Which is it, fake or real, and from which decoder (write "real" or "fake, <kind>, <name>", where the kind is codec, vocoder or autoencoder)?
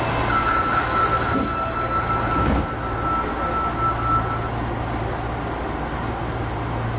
real